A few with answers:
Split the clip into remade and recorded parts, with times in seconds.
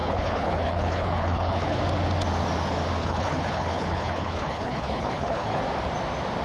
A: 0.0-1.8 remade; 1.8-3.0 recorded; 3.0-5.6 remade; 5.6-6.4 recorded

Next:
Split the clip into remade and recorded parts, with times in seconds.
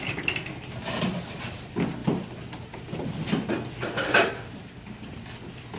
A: 0.0-5.8 recorded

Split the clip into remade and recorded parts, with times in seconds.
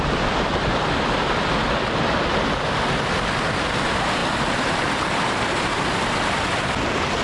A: 0.0-7.2 recorded